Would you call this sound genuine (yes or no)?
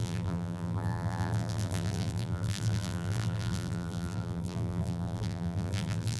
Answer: no